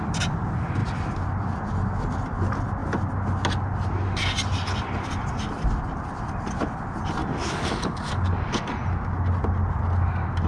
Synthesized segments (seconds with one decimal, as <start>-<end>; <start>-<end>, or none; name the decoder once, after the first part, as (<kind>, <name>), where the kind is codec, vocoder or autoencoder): 7.2-8.7 (codec, DAC)